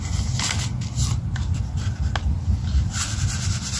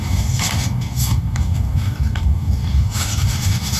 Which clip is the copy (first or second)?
second